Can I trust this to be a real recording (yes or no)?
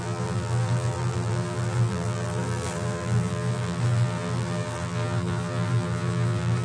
no